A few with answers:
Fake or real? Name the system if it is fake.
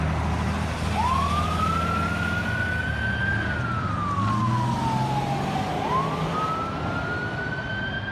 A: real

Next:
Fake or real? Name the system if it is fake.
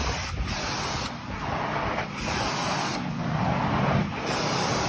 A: real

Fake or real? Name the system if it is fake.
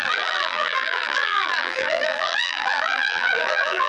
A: fake, vocoder, BigVGAN v2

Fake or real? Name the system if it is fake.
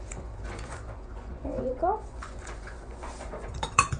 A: fake, vocoder, Vocos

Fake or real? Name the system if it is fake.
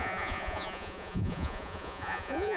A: fake, vocoder, Vocos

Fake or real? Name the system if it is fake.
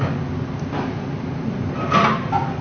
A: real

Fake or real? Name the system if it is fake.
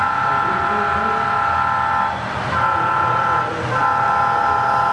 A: real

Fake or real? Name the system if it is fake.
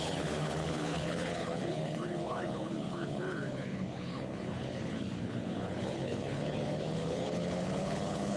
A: fake, codec, HILCodec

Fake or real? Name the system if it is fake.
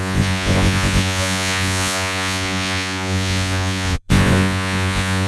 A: fake, vocoder, Vocos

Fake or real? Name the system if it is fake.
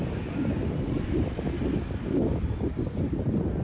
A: real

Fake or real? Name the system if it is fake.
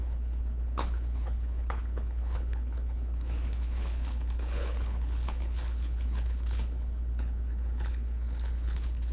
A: fake, codec, HILCodec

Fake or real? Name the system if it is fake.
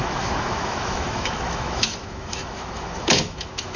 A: fake, autoencoder, DAC-VAE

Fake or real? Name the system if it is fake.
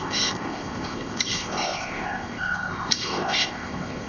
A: fake, codec, ZipCodec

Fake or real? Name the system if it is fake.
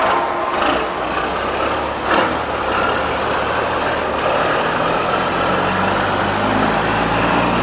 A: real